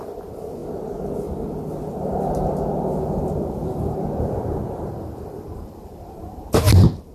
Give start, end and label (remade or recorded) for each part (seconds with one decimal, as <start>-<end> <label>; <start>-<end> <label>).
0.0-0.6 remade; 0.6-4.9 recorded; 4.9-7.1 remade